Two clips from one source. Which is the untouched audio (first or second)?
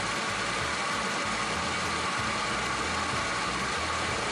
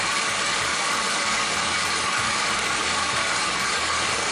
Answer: first